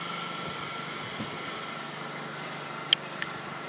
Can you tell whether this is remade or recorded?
recorded